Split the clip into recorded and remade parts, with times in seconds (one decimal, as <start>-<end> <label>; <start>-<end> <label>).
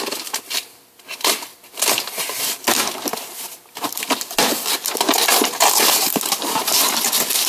0.0-7.5 recorded